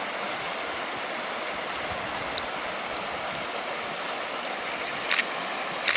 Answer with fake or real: real